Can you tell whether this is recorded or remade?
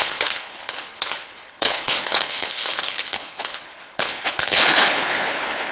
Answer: remade